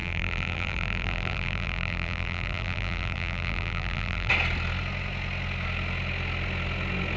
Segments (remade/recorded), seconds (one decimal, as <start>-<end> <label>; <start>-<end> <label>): 0.0-4.3 remade; 4.3-7.2 recorded